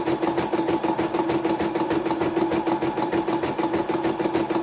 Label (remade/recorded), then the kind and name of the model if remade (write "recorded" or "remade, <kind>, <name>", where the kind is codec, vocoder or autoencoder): recorded